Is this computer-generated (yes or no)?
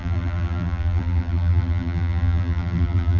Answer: yes